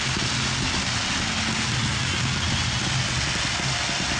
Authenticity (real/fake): real